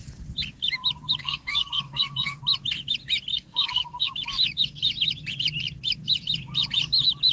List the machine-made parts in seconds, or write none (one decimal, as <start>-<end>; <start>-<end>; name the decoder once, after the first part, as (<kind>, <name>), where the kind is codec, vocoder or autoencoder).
1.2-2.4 (codec, SNAC); 3.3-4.1